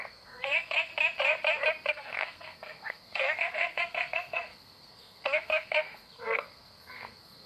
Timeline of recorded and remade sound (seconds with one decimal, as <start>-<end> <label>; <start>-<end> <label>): 0.0-0.9 remade; 0.9-1.9 recorded; 1.9-7.5 remade